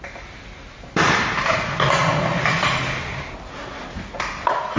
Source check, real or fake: real